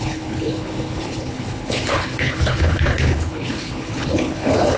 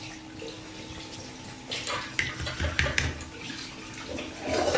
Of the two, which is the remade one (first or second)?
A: first